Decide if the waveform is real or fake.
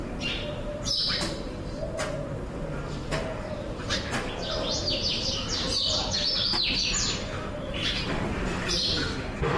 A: fake